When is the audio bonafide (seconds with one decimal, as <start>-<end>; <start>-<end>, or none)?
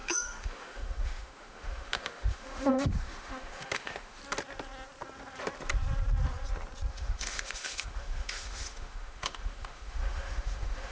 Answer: 4.2-6.9